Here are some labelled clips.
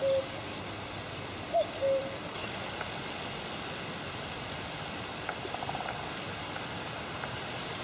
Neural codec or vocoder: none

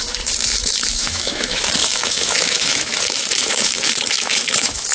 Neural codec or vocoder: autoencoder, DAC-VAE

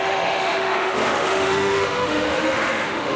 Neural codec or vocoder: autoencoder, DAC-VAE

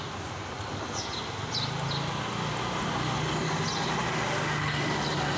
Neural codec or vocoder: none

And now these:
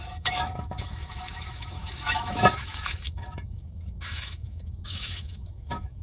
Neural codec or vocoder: autoencoder, DAC-VAE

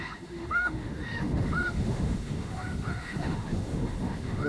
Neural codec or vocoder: autoencoder, DAC-VAE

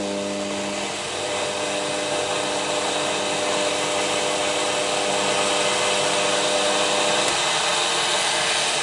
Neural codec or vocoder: none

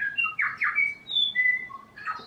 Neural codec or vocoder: none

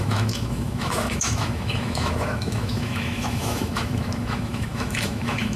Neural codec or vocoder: autoencoder, DAC-VAE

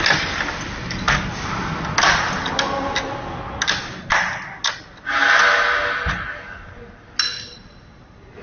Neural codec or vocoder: none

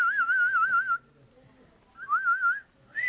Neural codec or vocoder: none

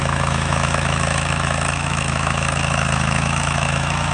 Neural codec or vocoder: autoencoder, DAC-VAE